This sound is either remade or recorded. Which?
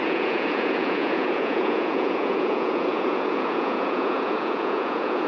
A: remade